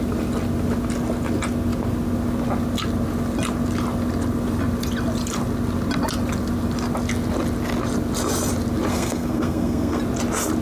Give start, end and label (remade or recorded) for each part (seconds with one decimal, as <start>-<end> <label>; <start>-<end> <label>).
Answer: 0.0-8.9 recorded; 8.9-10.0 remade; 10.0-10.6 recorded